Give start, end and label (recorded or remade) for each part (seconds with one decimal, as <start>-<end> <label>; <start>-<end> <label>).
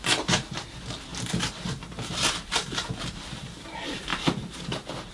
0.0-5.1 recorded